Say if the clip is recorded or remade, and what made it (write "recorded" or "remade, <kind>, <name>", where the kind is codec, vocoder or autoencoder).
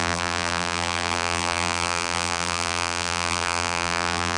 remade, vocoder, BigVGAN v2